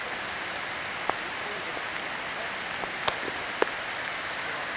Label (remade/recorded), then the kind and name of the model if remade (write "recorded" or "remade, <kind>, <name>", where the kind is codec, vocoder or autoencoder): recorded